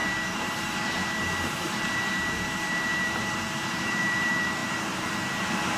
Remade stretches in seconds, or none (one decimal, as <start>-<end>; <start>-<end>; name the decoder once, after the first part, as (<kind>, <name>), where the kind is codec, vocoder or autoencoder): 0.0-5.8 (vocoder, BigVGAN v2)